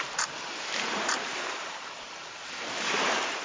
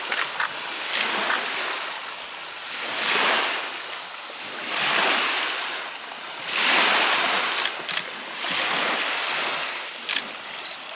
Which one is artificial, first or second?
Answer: first